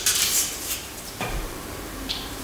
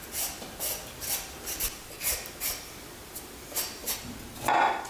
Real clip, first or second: second